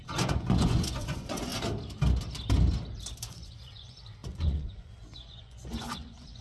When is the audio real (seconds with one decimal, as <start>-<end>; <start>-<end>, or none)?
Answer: 1.5-3.3